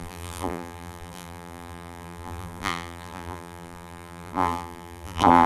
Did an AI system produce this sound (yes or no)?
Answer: yes